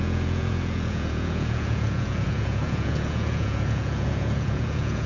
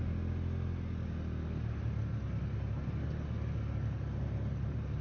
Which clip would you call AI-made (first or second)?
first